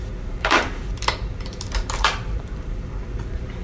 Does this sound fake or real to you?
fake